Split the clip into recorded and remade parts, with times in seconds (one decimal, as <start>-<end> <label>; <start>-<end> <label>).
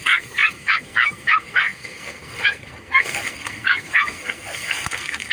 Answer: 0.0-5.3 remade